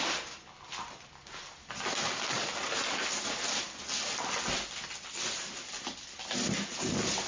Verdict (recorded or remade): recorded